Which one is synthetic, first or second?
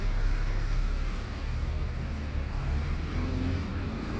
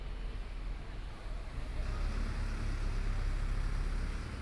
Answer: first